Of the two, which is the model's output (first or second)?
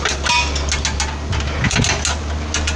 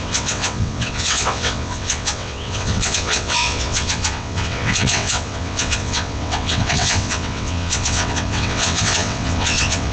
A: second